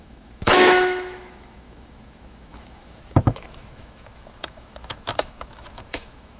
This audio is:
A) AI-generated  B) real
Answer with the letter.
A